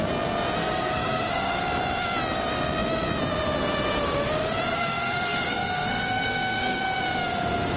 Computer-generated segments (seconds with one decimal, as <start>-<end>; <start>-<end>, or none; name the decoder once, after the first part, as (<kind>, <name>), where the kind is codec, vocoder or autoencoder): 0.6-1.6 (codec, SNAC); 4.7-6.8